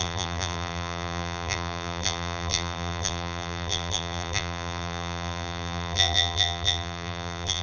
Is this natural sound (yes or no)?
no